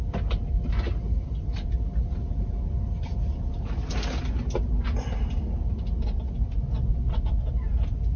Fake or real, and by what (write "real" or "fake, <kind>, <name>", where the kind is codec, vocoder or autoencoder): real